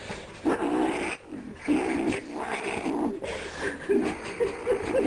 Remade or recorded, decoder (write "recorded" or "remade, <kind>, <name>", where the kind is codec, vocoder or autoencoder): recorded